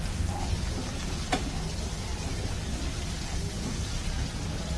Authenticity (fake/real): real